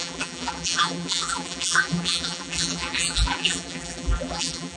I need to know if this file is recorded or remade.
remade